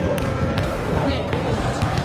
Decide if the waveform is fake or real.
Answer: fake